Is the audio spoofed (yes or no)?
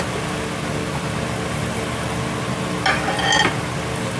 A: no